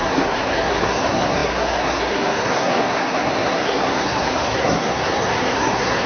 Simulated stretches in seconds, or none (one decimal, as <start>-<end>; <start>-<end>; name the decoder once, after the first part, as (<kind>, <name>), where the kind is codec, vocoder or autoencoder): 0.0-6.1 (codec, SNAC)